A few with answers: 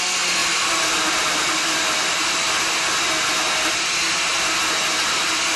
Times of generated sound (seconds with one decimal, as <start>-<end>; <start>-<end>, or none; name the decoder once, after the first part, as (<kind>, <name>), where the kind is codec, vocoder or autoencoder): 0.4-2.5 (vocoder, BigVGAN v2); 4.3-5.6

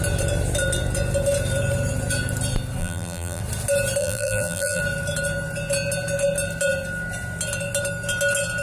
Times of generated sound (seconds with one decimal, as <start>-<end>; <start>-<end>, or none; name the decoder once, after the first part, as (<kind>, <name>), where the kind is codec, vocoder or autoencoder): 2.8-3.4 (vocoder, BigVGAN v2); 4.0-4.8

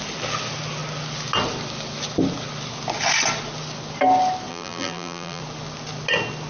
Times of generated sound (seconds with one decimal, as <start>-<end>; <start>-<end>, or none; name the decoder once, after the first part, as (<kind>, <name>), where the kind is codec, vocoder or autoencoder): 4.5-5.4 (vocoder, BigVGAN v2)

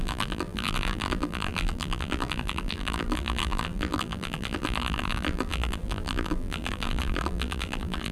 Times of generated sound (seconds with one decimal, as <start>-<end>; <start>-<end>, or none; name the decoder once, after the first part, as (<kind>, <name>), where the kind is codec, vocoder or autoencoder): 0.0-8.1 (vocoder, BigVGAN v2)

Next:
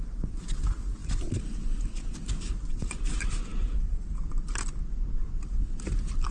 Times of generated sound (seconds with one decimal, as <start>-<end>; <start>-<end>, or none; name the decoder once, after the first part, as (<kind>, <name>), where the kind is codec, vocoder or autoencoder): 0.0-1.0 (vocoder, BigVGAN v2); 2.1-6.3

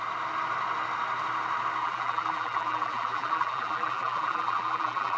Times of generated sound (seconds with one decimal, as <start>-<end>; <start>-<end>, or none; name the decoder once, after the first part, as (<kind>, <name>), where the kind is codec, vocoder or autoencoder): 1.8-5.2 (vocoder, BigVGAN v2)